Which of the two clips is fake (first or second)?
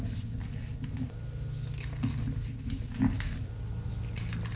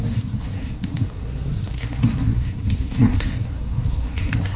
second